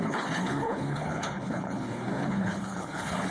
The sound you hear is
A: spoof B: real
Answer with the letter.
A